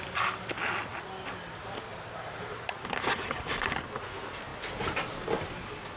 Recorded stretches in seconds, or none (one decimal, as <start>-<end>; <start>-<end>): 0.0-0.9; 1.5-6.0